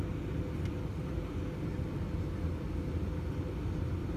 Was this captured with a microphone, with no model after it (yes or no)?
yes